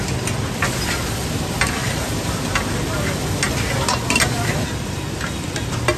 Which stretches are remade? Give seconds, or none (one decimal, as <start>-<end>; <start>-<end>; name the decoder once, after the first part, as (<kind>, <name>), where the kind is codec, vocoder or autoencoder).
none